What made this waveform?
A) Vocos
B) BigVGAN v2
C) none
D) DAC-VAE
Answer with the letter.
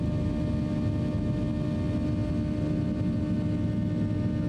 C